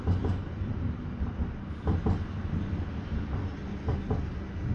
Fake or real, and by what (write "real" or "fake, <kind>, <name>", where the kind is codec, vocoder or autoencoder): real